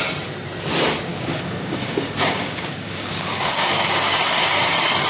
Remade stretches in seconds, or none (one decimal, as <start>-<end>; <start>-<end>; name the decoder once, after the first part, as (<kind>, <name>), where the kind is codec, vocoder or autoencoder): 1.1-4.2 (codec, DAC)